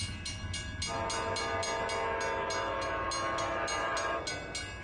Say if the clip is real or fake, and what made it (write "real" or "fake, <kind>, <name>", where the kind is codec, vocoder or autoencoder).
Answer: real